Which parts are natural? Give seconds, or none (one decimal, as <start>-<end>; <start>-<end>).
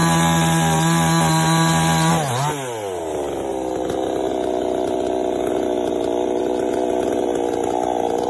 0.0-8.3